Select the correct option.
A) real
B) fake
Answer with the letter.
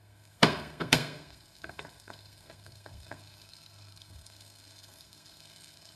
B